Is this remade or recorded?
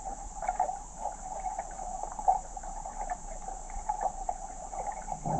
remade